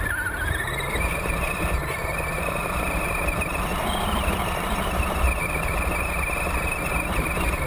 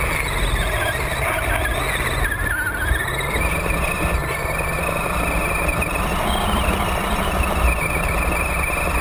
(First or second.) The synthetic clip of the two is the first